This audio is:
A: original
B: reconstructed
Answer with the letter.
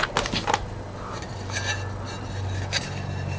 A